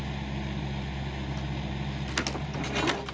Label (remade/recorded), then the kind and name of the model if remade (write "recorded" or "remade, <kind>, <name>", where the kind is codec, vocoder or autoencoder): recorded